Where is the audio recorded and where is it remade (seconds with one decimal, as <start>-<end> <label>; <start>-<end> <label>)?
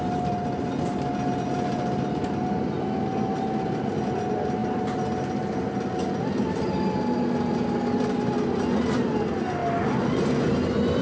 0.0-11.0 recorded